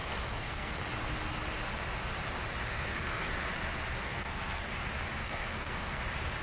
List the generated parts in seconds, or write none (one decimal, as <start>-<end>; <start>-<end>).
0.0-0.8; 2.7-3.3; 4.0-4.7; 5.2-6.0